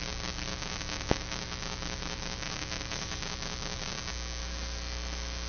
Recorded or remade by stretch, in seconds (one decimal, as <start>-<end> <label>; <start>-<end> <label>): 0.0-0.5 recorded; 0.5-3.8 remade; 3.8-4.4 recorded; 4.4-5.5 remade